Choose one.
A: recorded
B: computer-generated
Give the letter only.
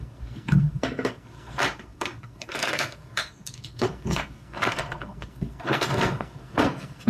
B